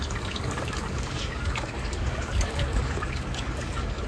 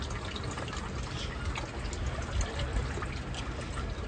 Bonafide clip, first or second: second